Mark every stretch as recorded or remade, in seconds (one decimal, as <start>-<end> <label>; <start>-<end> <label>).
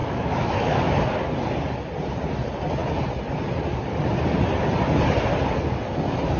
0.0-0.8 remade; 0.8-6.4 recorded